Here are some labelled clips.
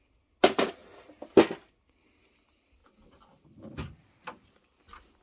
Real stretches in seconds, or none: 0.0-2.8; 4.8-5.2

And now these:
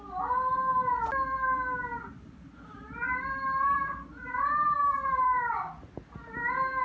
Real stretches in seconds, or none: 0.0-1.9; 5.4-6.8

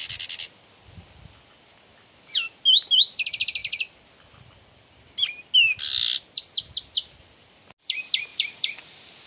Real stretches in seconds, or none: 0.0-3.6; 4.8-8.3; 8.9-9.3

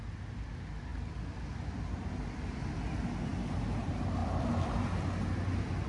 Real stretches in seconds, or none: 0.0-5.9

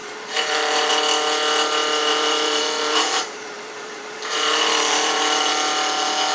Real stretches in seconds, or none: 0.9-2.0; 5.5-6.3

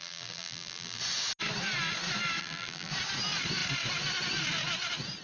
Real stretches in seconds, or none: 1.0-2.4; 2.9-5.2